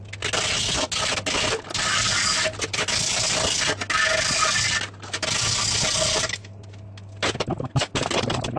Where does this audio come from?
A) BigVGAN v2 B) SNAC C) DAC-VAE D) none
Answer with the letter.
D